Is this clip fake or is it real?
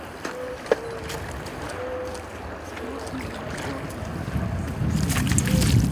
real